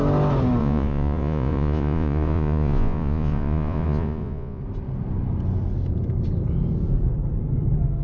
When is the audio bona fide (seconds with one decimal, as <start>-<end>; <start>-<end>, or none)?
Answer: 0.0-0.6; 4.6-8.0